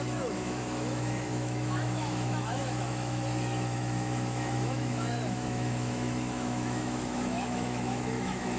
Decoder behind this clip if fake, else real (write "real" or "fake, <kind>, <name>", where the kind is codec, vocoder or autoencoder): fake, autoencoder, DAC-VAE